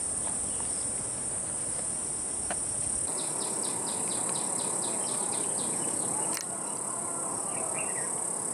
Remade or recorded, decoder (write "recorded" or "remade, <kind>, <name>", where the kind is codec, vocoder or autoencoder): recorded